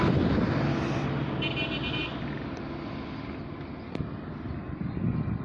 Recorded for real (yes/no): yes